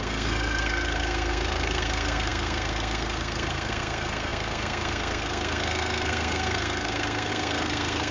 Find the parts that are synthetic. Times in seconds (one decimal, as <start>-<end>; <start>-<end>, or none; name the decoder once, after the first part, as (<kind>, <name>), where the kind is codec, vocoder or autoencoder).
0.0-8.1 (codec, SNAC)